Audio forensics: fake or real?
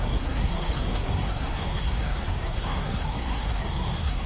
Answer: fake